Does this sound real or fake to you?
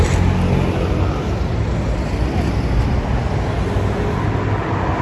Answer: real